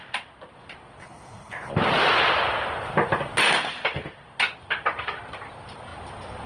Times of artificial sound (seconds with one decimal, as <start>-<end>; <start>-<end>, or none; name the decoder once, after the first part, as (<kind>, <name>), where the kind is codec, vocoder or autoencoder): 1.0-1.7 (codec, HILCodec)